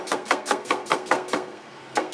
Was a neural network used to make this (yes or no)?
yes